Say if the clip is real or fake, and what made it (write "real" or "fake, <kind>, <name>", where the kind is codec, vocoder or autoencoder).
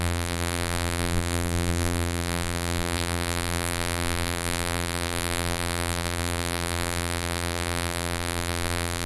fake, vocoder, BigVGAN v2